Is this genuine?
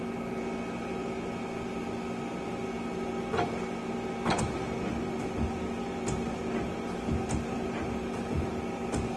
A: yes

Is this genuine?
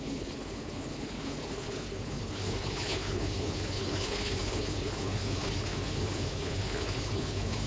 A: no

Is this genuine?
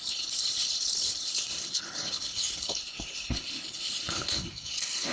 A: no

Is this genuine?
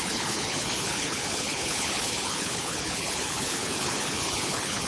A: no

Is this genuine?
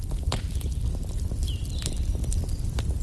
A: yes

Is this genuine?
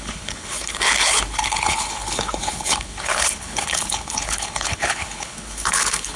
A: no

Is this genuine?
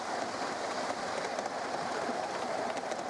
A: yes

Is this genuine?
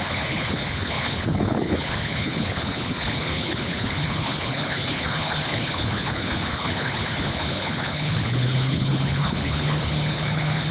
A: no